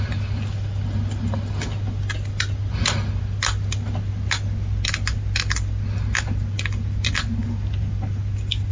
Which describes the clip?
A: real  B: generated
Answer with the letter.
A